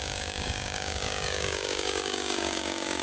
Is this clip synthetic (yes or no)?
yes